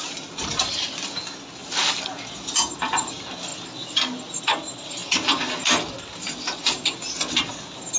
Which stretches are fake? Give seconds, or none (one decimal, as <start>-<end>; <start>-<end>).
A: none